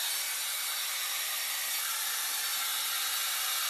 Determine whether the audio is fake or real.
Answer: real